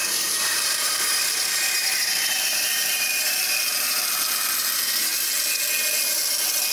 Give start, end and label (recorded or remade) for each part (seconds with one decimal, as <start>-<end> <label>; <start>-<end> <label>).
0.0-4.0 remade; 4.0-6.7 recorded